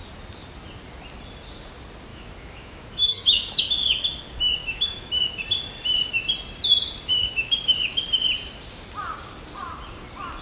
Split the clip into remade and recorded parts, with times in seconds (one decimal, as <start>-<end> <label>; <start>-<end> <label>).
0.0-2.1 recorded; 2.1-3.6 remade; 3.6-4.6 recorded; 4.6-5.4 remade; 5.4-7.1 recorded; 7.1-8.0 remade; 8.0-10.4 recorded